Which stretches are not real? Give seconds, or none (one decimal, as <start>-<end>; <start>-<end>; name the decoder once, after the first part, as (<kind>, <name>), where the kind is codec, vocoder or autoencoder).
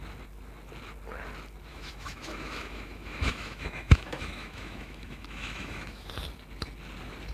1.7-6.1 (autoencoder, DAC-VAE)